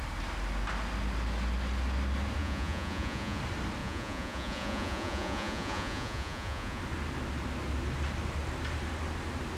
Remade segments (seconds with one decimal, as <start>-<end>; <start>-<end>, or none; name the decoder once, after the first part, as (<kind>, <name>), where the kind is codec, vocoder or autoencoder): 2.4-3.4 (vocoder, Vocos); 3.8-6.8